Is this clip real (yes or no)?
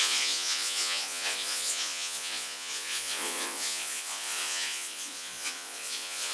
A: no